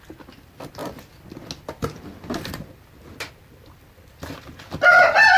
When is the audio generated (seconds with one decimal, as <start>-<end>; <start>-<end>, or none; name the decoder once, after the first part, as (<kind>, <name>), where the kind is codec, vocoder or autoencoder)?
none